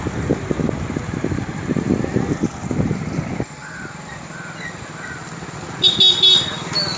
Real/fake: real